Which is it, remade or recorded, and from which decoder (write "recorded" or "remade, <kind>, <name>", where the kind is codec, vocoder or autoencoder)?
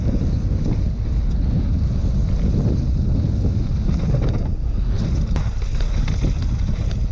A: recorded